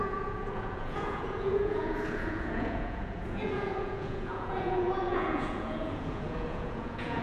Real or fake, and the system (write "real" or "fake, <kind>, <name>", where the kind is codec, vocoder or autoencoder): fake, vocoder, Vocos